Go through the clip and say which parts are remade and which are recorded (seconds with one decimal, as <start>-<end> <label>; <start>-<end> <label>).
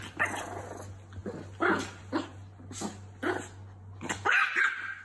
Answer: 0.0-5.0 recorded